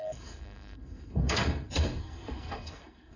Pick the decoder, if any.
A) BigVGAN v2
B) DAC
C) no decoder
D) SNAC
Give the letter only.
D